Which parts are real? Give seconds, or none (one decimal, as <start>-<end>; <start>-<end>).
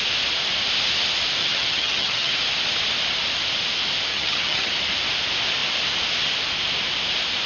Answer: 0.0-1.4; 2.3-4.1; 4.7-7.5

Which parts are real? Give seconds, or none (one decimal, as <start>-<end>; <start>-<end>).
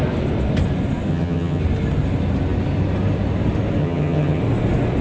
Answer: 0.0-1.1; 1.6-3.8; 4.4-5.0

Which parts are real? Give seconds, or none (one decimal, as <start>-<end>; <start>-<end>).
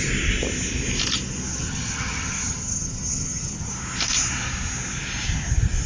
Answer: 0.0-1.5; 3.7-5.9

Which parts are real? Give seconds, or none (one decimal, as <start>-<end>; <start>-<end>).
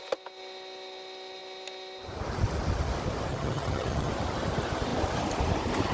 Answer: 0.0-3.3; 4.1-5.9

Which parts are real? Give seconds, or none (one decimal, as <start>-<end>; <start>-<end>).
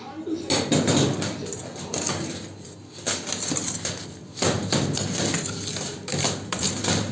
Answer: 0.0-7.1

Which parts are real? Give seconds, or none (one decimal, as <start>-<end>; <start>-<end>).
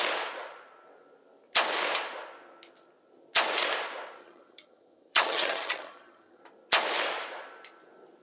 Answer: 0.0-4.2; 6.4-8.2